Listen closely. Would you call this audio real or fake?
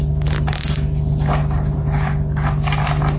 real